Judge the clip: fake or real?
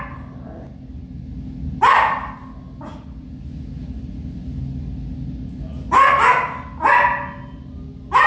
real